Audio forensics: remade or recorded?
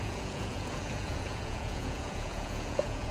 remade